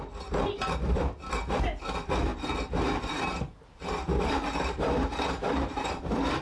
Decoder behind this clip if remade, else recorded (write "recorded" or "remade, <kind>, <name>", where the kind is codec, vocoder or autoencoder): recorded